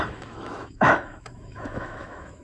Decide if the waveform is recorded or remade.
remade